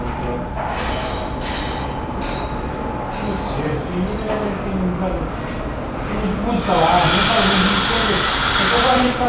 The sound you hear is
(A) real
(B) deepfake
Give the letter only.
A